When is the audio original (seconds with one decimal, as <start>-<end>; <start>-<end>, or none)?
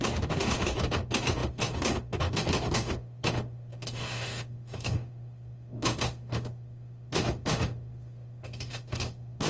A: none